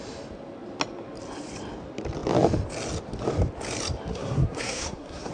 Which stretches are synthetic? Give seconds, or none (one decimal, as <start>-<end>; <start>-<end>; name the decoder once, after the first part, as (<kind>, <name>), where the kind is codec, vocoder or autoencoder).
4.1-5.3 (codec, SNAC)